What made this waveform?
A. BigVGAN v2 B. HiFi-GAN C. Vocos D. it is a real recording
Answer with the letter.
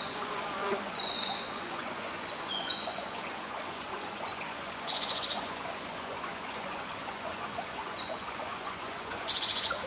C